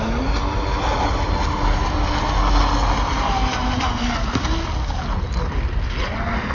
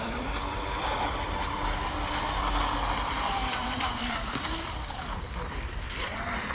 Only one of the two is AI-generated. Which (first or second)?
second